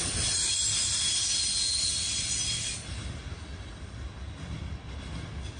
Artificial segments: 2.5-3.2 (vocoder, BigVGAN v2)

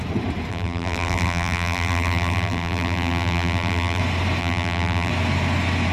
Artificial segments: 0.5-4.0 (vocoder, BigVGAN v2); 4.4-5.1